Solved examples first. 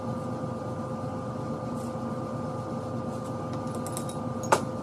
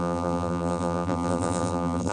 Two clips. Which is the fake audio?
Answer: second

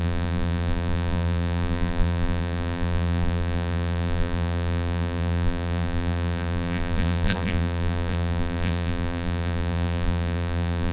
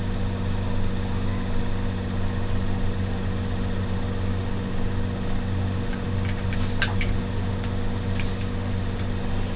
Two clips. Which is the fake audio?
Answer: first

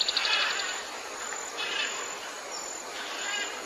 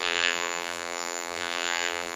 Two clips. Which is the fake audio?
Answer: second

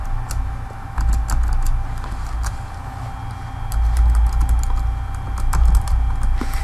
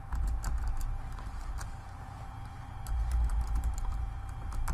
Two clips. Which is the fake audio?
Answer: second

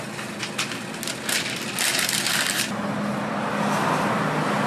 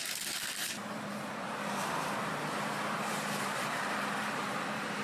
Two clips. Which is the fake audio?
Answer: second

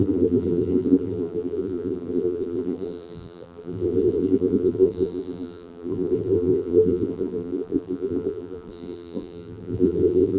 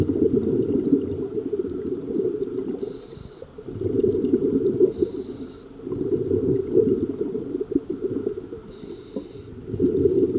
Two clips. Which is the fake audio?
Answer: first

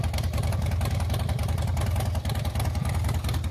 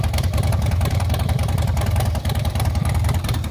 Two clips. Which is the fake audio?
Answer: second